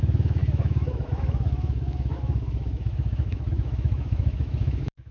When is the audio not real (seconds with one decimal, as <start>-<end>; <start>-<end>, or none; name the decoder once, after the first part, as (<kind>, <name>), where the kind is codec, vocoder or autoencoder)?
0.0-5.1 (autoencoder, DAC-VAE)